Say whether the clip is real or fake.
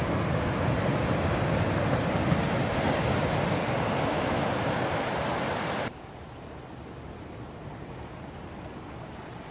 real